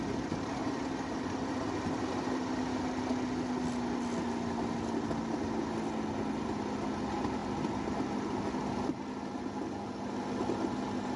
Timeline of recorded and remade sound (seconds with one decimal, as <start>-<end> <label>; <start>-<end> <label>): 0.0-11.2 recorded